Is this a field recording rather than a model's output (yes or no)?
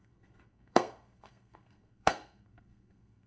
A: no